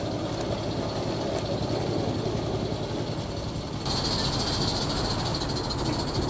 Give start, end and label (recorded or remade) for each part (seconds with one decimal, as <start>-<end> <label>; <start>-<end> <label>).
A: 0.0-6.3 recorded